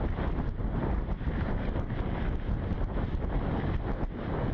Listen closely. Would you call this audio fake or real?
real